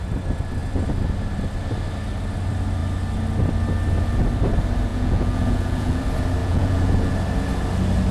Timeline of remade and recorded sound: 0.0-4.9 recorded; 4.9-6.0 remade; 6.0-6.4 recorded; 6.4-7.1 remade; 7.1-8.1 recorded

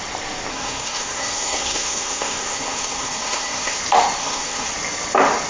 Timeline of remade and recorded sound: 0.0-0.5 recorded; 0.5-3.8 remade; 3.8-4.2 recorded; 4.2-4.7 remade; 4.7-5.5 recorded

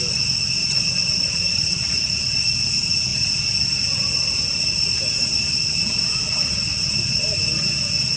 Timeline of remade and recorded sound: 0.0-0.6 recorded; 0.6-2.3 remade; 2.3-8.2 recorded

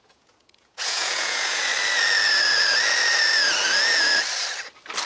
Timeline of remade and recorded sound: 0.0-1.7 remade; 1.7-5.1 recorded